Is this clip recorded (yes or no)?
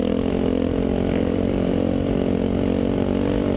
yes